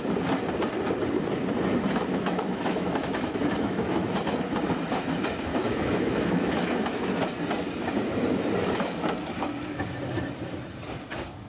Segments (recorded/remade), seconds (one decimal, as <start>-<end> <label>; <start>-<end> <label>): 0.0-2.1 recorded; 2.1-4.1 remade; 4.1-5.5 recorded; 5.5-7.2 remade; 7.2-11.5 recorded